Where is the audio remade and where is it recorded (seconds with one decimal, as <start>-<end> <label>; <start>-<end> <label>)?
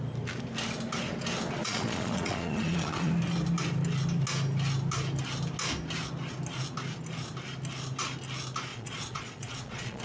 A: 0.0-1.6 recorded; 1.6-3.1 remade; 3.1-8.7 recorded; 8.7-10.0 remade